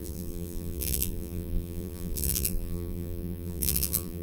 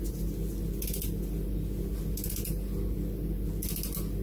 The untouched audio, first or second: second